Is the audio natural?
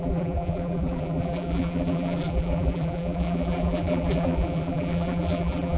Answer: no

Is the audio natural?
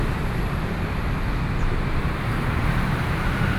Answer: no